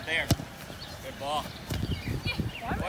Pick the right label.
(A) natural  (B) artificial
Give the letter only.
A